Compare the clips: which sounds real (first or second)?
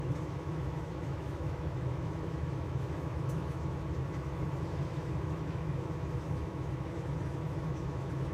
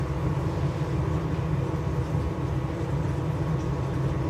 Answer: second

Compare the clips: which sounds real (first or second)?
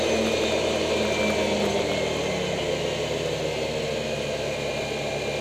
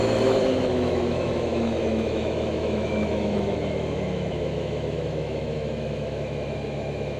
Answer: first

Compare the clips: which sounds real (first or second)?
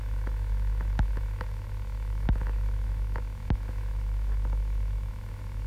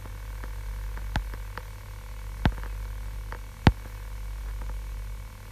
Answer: second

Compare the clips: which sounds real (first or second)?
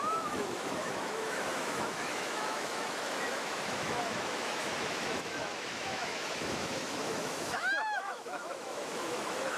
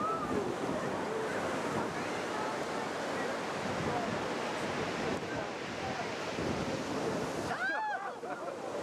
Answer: second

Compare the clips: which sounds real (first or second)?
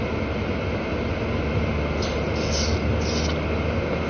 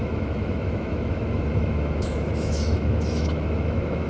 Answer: first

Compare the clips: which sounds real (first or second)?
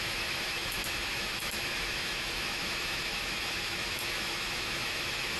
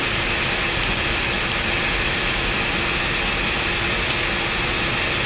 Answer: second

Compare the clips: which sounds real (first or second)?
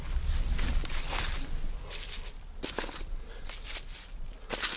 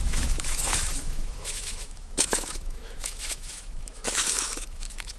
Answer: first